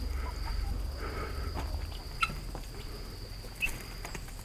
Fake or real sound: real